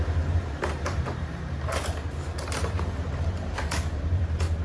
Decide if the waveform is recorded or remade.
remade